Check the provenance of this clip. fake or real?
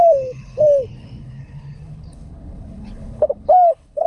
fake